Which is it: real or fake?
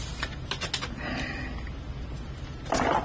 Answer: real